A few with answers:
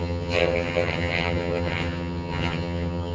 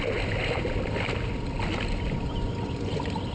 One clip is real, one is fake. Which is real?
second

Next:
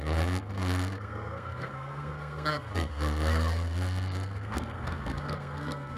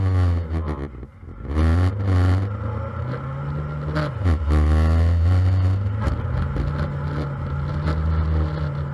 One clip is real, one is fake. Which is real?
second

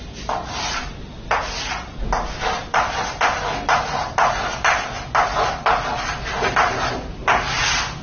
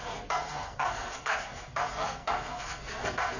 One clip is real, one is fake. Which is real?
first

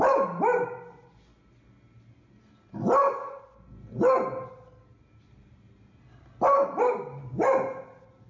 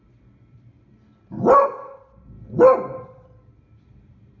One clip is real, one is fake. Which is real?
first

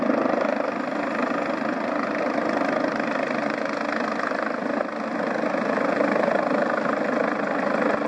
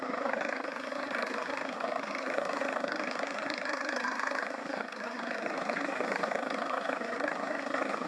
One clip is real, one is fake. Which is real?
first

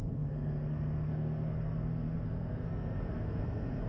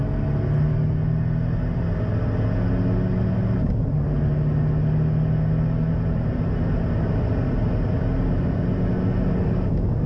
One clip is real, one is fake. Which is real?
second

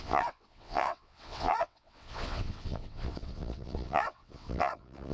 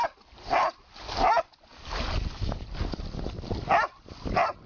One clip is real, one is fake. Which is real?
second